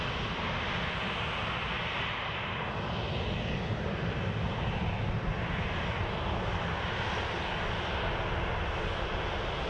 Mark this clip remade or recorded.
recorded